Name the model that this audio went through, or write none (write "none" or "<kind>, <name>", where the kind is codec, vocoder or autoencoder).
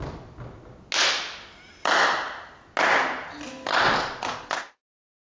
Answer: none